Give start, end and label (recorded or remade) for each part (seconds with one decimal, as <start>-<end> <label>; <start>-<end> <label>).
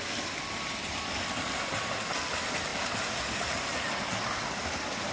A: 0.0-5.1 recorded